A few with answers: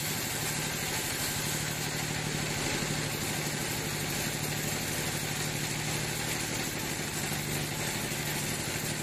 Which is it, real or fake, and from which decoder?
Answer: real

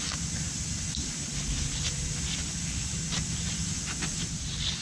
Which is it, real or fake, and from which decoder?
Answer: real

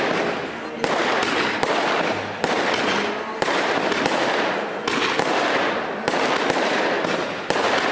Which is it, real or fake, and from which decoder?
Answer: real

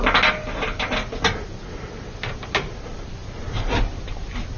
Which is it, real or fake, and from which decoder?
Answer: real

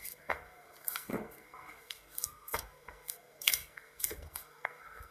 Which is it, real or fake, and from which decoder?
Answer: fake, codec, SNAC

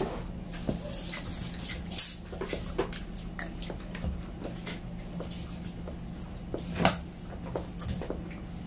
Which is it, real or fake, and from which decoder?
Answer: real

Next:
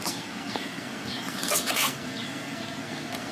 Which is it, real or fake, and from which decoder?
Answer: fake, codec, SNAC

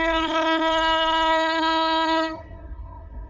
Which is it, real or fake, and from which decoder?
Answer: fake, codec, SNAC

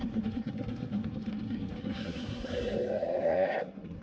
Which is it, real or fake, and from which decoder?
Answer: fake, codec, SNAC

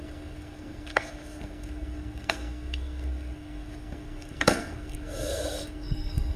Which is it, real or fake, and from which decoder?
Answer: fake, codec, SNAC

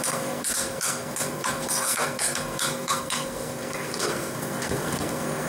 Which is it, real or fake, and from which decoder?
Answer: fake, codec, SNAC